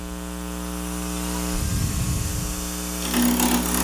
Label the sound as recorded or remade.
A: recorded